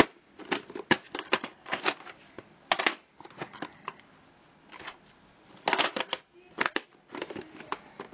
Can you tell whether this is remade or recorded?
recorded